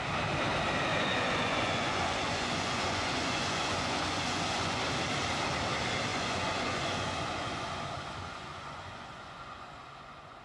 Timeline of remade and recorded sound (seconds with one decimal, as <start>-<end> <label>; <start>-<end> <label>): 0.0-0.9 recorded; 0.9-4.8 remade; 4.8-6.1 recorded; 6.1-10.4 remade